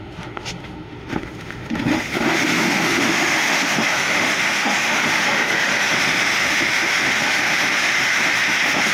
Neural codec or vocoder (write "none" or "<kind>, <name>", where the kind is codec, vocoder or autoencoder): autoencoder, DAC-VAE